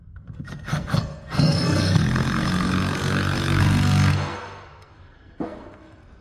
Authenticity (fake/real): fake